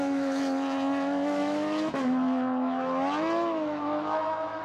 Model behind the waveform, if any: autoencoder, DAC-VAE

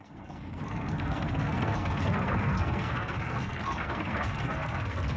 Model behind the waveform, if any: codec, SNAC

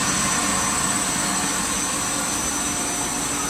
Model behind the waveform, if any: none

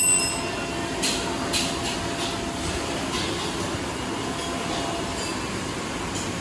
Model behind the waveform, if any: none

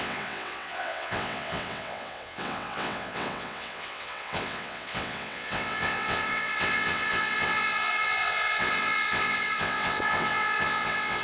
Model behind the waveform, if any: vocoder, WaveNeXt